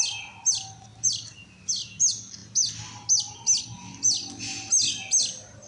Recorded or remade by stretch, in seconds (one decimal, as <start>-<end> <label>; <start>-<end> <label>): 0.0-0.9 recorded; 0.9-1.7 remade; 1.7-5.7 recorded